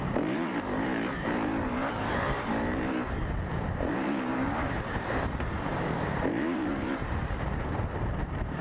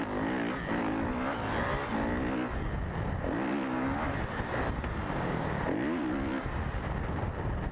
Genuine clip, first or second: second